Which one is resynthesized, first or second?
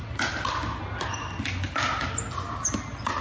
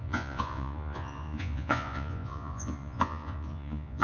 second